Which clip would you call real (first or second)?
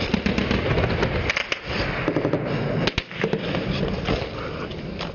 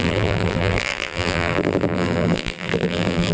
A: first